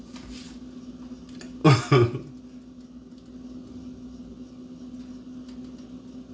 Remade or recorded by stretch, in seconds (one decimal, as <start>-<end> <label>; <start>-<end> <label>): 0.0-6.3 recorded